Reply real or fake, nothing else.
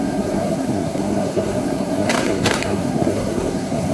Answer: fake